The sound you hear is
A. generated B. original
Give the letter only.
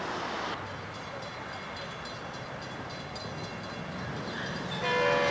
B